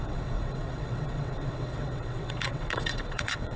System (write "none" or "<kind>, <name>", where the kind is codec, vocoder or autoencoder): vocoder, WaveNeXt